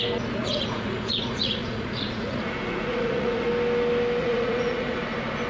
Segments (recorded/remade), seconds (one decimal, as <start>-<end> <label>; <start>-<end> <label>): 0.0-0.4 recorded; 0.4-3.5 remade; 3.5-4.2 recorded; 4.2-5.0 remade; 5.0-5.5 recorded